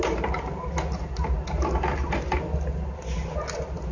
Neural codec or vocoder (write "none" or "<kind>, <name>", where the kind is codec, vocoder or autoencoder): none